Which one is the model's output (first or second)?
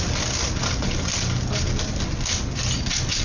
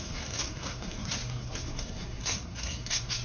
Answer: second